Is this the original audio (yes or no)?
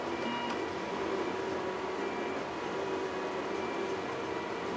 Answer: yes